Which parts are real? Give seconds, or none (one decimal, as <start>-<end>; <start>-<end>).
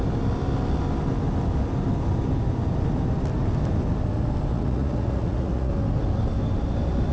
0.0-4.5; 5.7-7.1